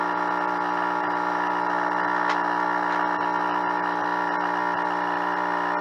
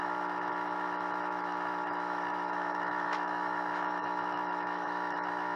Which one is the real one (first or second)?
first